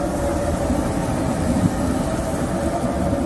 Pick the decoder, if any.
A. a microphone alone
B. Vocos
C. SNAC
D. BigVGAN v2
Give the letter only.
A